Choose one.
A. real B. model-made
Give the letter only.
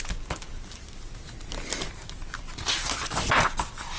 A